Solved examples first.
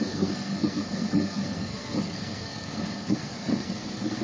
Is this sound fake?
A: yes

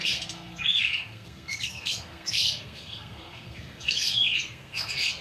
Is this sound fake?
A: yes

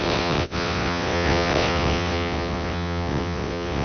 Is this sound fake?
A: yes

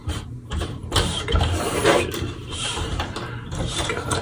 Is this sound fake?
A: yes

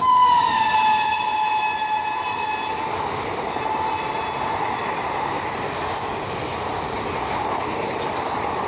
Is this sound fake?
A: no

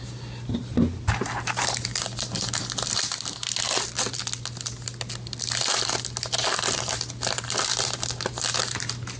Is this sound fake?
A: no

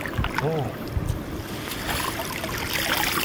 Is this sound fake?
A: no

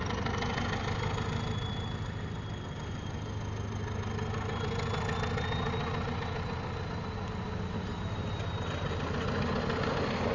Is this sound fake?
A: no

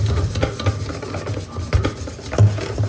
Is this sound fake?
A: no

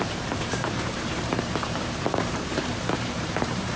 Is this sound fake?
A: yes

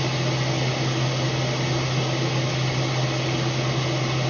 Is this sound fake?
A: no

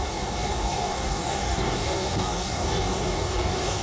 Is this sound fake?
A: yes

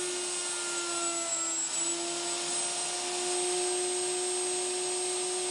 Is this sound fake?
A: no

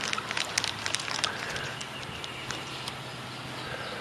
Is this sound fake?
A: yes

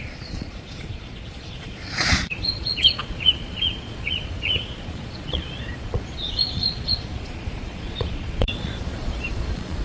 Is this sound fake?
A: yes